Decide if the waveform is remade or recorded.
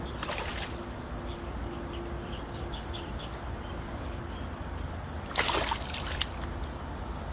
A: recorded